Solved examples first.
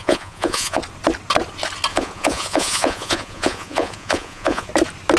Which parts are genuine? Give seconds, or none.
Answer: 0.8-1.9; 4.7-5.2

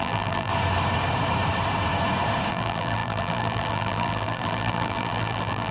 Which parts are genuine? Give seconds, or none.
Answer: 0.5-2.5

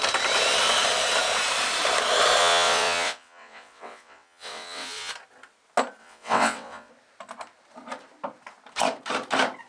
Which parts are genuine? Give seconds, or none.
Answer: 0.0-2.4; 5.1-6.0; 6.9-9.7

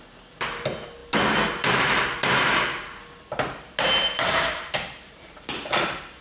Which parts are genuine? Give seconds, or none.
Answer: 0.0-6.2